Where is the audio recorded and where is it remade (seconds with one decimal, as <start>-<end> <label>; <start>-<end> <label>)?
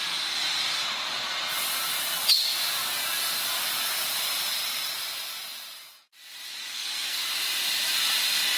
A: 0.0-6.7 recorded; 6.7-7.3 remade; 7.3-8.6 recorded